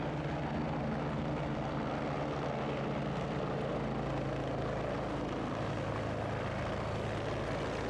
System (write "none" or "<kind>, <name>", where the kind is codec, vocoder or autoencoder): none